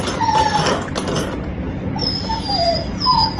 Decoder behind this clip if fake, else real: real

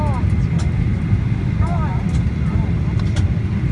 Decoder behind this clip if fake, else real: real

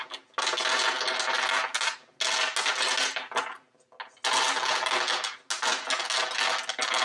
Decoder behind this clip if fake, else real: real